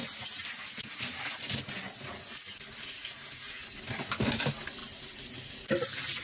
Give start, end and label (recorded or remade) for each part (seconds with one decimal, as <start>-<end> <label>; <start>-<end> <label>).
0.0-3.6 recorded; 3.6-4.3 remade; 4.3-6.2 recorded